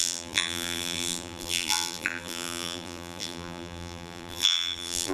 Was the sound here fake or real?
fake